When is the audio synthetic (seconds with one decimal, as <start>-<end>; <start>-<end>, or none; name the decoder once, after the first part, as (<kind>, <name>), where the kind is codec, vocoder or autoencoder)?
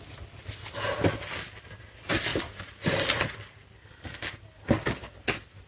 none